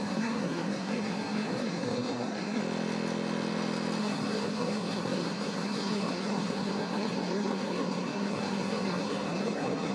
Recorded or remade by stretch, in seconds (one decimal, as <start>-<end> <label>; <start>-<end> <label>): 0.0-2.6 remade; 2.6-4.0 recorded; 4.0-9.9 remade